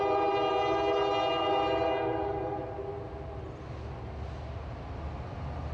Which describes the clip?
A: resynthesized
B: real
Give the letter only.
B